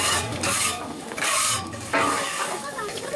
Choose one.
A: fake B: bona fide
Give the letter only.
A